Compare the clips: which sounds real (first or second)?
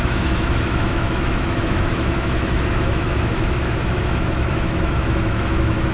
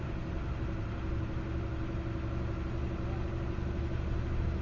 second